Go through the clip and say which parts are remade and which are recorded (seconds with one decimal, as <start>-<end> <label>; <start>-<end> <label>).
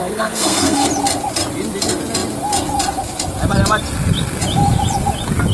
0.0-0.9 remade; 0.9-5.5 recorded